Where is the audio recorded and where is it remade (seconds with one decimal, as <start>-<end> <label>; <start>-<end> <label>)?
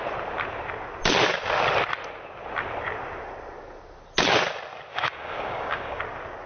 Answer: 0.0-4.9 recorded; 4.9-6.0 remade; 6.0-6.5 recorded